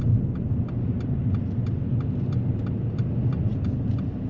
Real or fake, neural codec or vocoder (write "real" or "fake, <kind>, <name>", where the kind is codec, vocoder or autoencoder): real